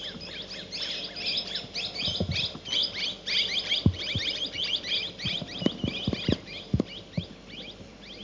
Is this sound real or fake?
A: real